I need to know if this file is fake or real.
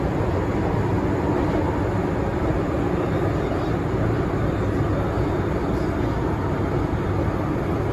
real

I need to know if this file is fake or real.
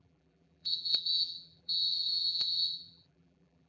fake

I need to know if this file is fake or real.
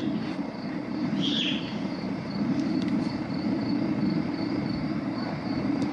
fake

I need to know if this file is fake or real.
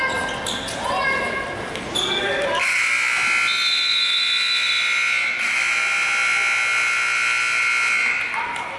real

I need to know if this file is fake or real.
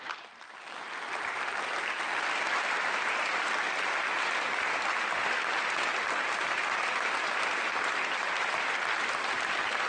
fake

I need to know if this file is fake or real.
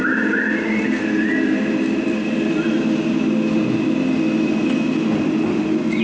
real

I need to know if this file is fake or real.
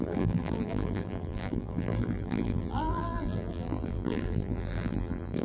fake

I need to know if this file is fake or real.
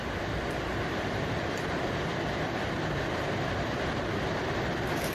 real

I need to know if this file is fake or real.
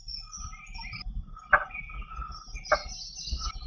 real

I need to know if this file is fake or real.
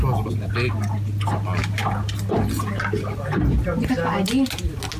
real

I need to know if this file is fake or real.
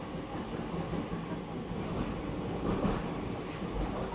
real